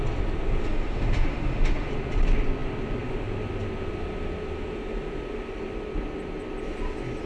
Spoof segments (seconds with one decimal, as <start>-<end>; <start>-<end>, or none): 0.6-1.9